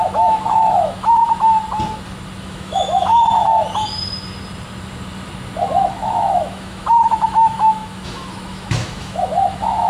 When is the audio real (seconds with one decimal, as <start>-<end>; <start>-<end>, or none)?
1.2-2.4; 3.1-5.6